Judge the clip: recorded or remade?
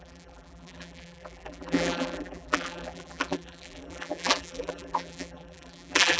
remade